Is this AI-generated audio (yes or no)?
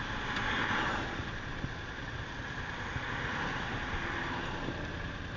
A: no